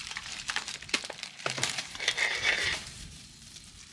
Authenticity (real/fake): fake